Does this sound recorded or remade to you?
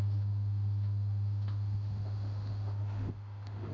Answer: remade